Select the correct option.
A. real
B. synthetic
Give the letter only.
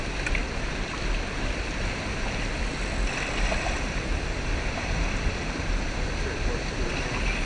B